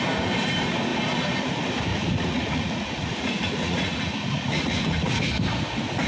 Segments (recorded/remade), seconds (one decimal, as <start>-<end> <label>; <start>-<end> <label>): 0.0-1.9 recorded; 1.9-5.2 remade; 5.2-6.1 recorded